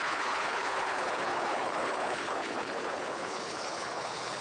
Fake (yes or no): yes